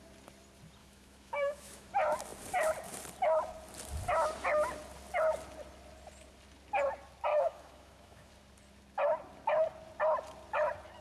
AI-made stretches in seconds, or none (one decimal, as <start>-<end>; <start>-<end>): 0.8-1.9; 7.3-8.3